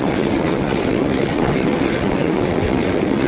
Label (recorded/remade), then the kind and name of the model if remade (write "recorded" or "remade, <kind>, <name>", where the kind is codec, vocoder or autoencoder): remade, vocoder, WaveNeXt